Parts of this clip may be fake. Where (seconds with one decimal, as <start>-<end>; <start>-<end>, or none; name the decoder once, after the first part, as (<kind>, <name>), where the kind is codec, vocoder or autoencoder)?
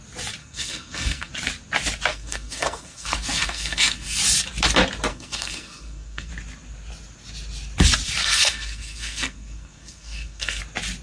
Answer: 0.4-1.3 (codec, SNAC); 2.1-4.2; 5.1-6.3; 8.2-10.6